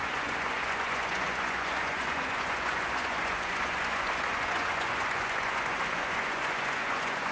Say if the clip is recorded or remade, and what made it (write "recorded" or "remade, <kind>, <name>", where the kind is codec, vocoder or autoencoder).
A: remade, vocoder, Vocos